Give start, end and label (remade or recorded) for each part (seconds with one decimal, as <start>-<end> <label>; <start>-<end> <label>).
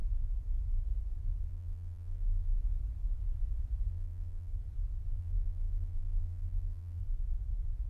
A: 0.0-1.5 recorded; 1.5-2.6 remade; 2.6-3.9 recorded; 3.9-4.5 remade; 4.5-5.2 recorded; 5.2-7.0 remade; 7.0-7.9 recorded